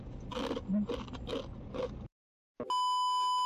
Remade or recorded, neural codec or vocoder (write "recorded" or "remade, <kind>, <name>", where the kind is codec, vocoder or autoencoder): recorded